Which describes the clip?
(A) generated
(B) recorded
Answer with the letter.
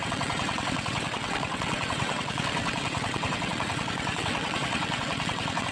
A